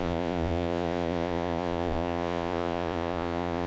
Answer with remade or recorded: remade